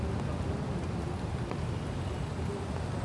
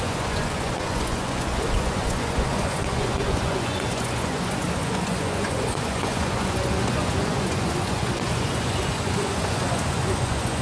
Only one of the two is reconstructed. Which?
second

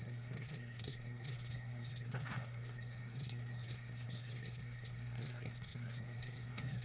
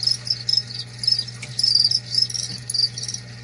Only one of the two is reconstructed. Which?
first